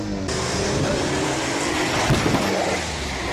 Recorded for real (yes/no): yes